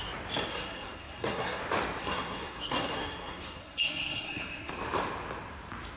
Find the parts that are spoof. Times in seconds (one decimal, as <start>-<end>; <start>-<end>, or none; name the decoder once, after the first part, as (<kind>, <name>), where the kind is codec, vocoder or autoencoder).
0.5-1.6 (codec, SNAC); 2.0-4.7